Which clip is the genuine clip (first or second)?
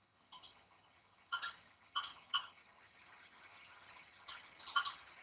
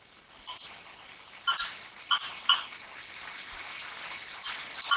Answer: second